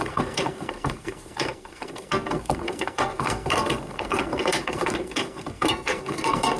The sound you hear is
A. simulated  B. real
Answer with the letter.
A